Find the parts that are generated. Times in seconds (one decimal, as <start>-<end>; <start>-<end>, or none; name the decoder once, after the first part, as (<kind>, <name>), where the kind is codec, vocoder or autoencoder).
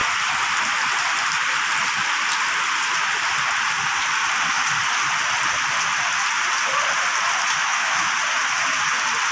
7.6-8.1 (autoencoder, DAC-VAE)